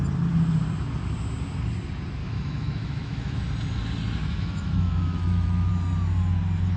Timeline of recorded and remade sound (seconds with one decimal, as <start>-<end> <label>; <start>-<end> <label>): 0.0-2.2 recorded; 2.2-3.4 remade; 3.4-4.2 recorded; 4.2-5.7 remade; 5.7-6.8 recorded